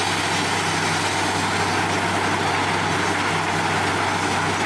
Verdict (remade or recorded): recorded